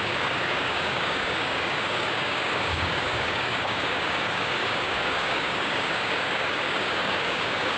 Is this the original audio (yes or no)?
no